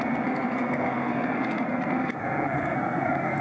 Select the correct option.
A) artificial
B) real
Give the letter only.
A